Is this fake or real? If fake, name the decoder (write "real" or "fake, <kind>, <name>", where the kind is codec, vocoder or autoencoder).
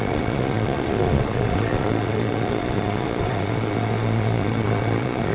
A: fake, vocoder, Vocos